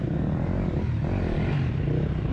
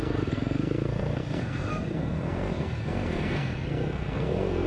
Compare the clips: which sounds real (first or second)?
first